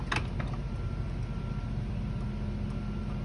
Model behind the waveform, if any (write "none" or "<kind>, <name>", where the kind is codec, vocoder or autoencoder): none